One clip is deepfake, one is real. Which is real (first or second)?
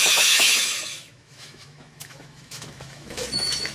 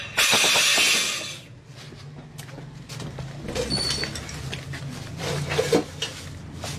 second